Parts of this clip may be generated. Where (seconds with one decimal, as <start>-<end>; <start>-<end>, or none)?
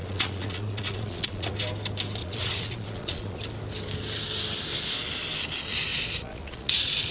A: 0.0-1.5; 2.2-3.4; 5.9-7.1